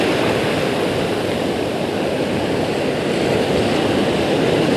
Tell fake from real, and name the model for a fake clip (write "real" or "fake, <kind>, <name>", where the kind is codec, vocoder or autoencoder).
real